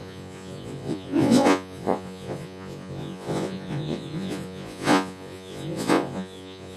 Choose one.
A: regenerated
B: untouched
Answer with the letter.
A